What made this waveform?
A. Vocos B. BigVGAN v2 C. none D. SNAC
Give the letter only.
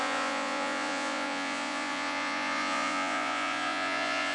A